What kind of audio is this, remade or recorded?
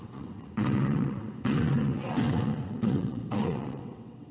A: remade